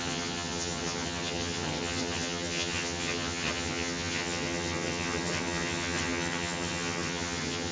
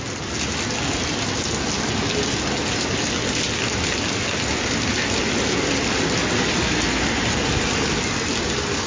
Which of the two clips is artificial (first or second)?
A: first